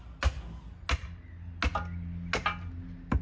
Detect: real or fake real